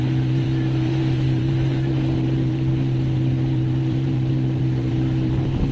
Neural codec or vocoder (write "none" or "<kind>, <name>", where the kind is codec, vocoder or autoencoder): vocoder, BigVGAN v2